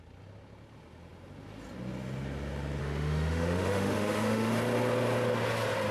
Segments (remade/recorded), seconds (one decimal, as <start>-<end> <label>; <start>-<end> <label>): 0.0-2.8 recorded; 2.8-4.5 remade; 4.5-5.9 recorded

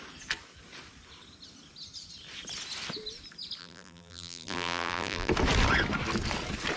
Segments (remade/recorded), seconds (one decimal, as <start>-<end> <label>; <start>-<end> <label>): 0.0-3.6 recorded; 3.6-5.3 remade; 5.3-6.8 recorded